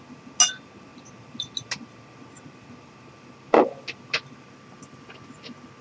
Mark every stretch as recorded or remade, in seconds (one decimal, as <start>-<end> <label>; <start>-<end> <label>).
0.0-5.8 recorded